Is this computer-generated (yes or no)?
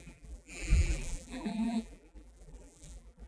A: yes